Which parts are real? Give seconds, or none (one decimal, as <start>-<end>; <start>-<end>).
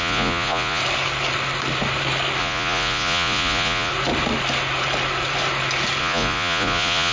0.8-2.4; 3.9-6.0